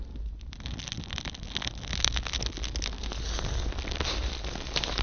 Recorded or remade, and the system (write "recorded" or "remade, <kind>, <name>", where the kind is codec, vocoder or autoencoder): recorded